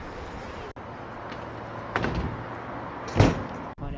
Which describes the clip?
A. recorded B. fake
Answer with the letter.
A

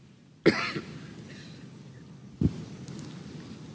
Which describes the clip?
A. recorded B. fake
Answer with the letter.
A